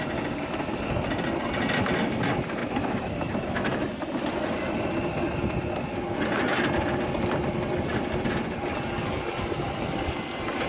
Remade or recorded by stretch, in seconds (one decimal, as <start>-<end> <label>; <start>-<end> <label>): 0.0-2.6 recorded; 2.6-5.0 remade; 5.0-10.7 recorded